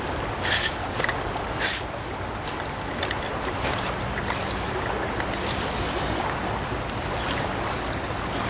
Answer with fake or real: real